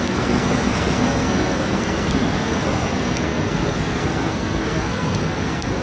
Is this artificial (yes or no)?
yes